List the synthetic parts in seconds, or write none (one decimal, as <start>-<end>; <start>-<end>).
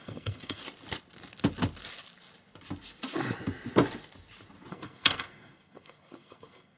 0.0-0.6; 4.7-6.8